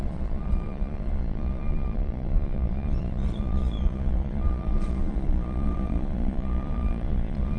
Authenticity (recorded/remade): remade